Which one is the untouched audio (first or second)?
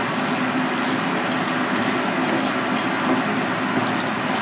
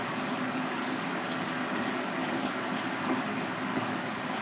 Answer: first